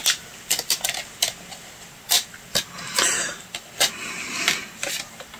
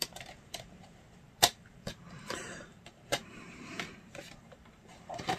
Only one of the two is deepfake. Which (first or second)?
second